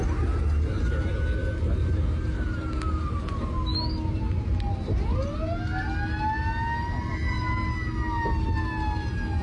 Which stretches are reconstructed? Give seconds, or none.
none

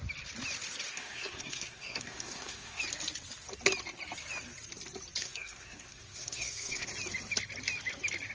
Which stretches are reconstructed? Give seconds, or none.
0.9-2.8; 5.2-6.9

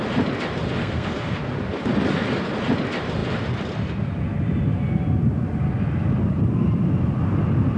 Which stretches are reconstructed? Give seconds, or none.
0.8-1.4

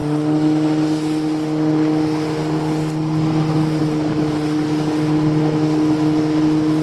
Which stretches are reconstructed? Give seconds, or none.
none

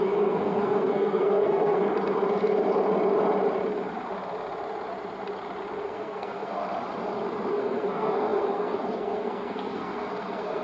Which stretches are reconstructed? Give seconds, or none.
0.0-1.8; 5.8-6.6; 7.5-10.6

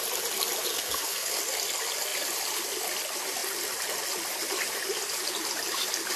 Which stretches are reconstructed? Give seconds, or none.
0.7-1.4

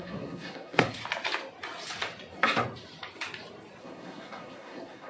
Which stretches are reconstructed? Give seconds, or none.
0.0-1.0; 3.8-5.1